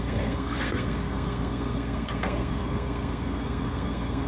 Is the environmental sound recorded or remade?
remade